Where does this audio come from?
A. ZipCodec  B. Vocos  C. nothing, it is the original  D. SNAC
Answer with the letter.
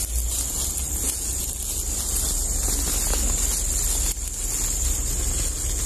C